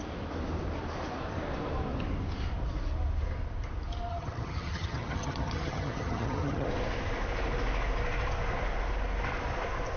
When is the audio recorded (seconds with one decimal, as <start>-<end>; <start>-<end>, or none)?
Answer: 0.0-4.1; 6.7-10.0